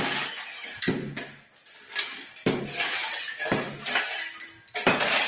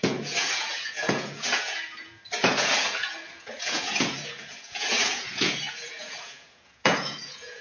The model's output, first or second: second